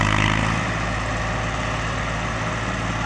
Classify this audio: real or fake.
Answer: real